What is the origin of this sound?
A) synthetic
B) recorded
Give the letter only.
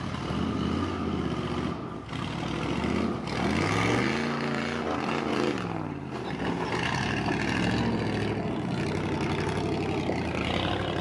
B